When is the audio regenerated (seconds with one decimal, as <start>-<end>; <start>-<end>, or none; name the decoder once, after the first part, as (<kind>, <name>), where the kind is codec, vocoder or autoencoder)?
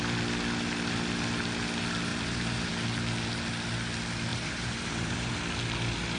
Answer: 2.1-2.7 (vocoder, BigVGAN v2); 4.3-5.3